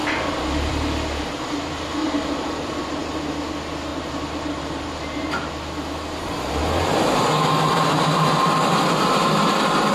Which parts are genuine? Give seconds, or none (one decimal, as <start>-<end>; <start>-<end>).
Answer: 0.0-2.0; 3.0-3.9; 5.5-9.9